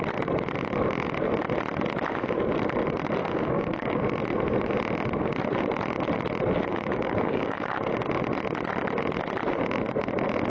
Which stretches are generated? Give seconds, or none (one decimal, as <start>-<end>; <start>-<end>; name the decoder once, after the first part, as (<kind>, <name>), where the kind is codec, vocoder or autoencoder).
3.2-4.0 (codec, DAC); 6.7-7.9